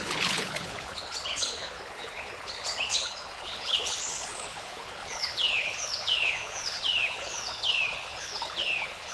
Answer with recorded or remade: remade